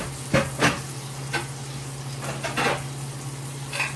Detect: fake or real real